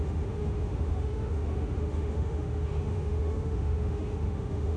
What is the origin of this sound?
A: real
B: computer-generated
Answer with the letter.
B